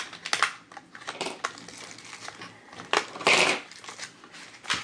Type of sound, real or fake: real